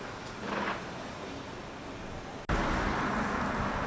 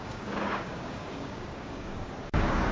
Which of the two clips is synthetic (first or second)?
second